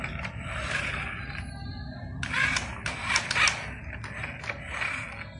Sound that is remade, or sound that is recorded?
recorded